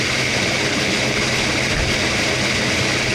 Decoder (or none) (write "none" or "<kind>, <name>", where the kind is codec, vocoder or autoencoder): none